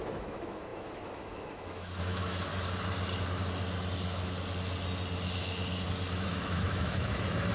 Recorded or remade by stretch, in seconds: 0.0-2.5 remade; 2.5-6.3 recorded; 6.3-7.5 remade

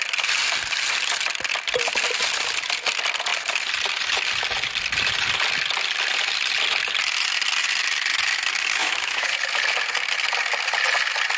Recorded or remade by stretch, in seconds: 0.0-8.8 recorded; 8.8-9.3 remade; 9.3-11.4 recorded

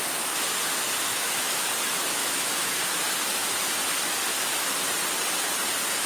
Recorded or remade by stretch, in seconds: 0.0-1.1 recorded; 1.1-1.7 remade; 1.7-2.2 recorded; 2.2-2.8 remade; 2.8-6.1 recorded